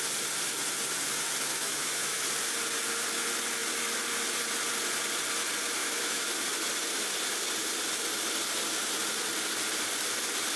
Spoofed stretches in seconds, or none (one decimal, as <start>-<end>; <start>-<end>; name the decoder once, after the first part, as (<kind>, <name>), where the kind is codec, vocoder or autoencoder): 1.5-2.3 (autoencoder, DAC-VAE); 5.8-6.3